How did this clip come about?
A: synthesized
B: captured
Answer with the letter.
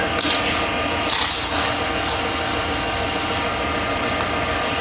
B